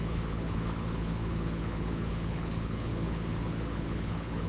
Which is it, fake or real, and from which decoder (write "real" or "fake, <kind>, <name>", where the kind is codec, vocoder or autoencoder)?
fake, codec, HILCodec